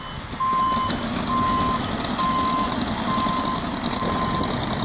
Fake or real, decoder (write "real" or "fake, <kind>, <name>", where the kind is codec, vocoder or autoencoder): real